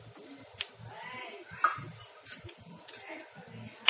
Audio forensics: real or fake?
real